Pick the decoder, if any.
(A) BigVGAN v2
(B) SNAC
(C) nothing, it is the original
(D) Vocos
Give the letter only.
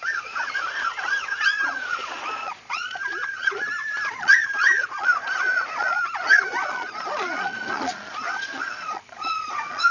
D